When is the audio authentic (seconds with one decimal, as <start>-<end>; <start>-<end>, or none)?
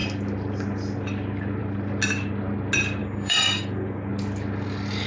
0.0-3.0; 4.1-5.1